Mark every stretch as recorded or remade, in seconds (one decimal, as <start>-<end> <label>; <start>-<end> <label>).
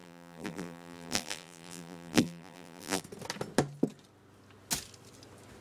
0.0-3.0 remade; 3.0-5.6 recorded